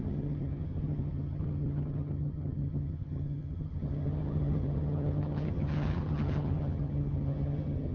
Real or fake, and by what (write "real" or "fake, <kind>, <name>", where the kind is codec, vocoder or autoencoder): fake, vocoder, HiFi-GAN